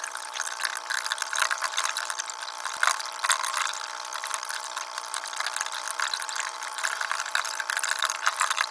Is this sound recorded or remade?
recorded